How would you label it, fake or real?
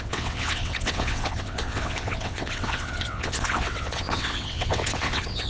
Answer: fake